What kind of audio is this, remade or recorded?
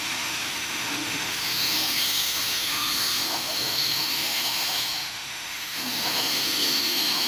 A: remade